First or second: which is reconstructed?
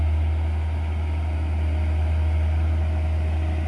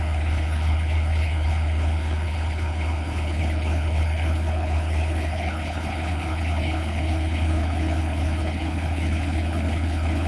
second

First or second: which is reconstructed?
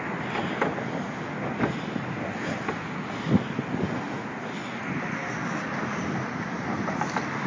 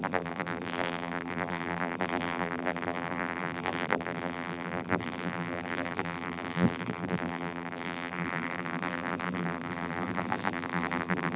second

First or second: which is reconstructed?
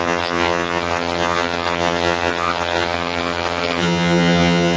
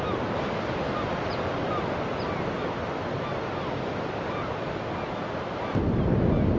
first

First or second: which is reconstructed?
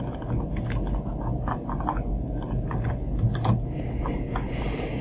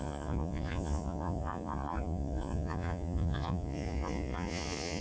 second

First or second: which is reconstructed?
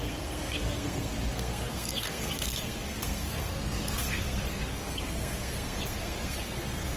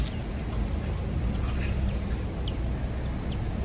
first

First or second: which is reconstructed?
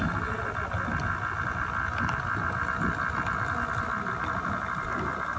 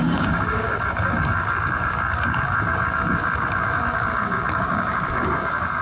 second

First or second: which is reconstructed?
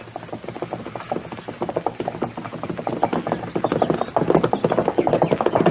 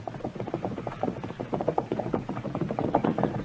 second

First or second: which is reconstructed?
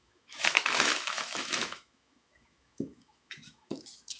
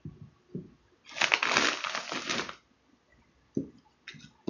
first